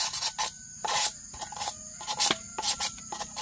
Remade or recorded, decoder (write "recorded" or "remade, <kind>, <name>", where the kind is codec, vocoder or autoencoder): recorded